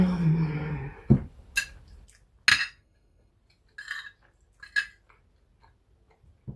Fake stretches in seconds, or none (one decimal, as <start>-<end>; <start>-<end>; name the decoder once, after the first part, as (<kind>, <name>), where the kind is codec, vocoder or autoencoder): 2.5-3.3 (codec, SNAC)